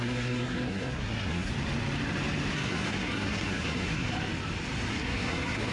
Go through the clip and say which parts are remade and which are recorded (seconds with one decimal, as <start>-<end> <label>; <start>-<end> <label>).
0.0-1.5 remade; 1.5-2.5 recorded; 2.5-4.1 remade; 4.1-4.9 recorded; 4.9-5.7 remade